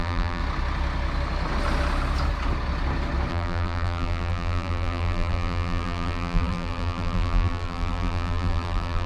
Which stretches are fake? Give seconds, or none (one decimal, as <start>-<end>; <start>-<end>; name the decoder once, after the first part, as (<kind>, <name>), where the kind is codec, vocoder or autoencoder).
0.0-0.4 (vocoder, BigVGAN v2); 3.3-9.1

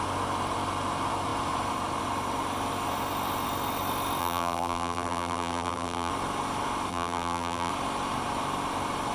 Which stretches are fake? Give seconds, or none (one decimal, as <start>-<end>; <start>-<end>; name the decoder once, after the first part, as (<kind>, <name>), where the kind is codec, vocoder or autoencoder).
4.2-6.1 (vocoder, BigVGAN v2); 6.9-7.7

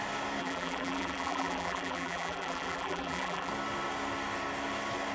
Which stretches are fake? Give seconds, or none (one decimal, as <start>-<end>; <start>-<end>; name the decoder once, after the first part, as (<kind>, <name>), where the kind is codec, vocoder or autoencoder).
0.4-3.5 (vocoder, BigVGAN v2)

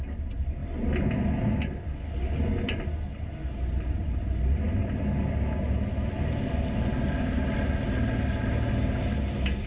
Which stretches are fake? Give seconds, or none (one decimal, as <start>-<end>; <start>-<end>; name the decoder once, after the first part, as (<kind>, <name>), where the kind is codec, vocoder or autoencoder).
0.6-1.4 (vocoder, BigVGAN v2)

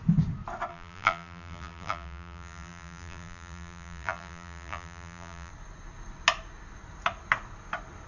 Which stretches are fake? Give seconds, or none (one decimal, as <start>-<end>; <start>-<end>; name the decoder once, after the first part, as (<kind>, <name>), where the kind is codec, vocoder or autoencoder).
0.7-5.5 (vocoder, BigVGAN v2)

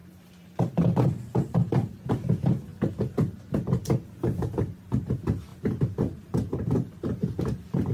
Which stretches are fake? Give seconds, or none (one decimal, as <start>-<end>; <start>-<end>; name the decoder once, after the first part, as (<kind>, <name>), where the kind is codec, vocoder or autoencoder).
0.0-2.3 (vocoder, BigVGAN v2); 5.5-7.9

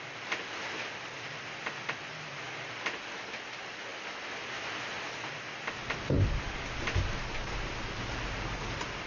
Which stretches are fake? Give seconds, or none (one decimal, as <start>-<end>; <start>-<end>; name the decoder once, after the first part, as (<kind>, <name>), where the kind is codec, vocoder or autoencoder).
none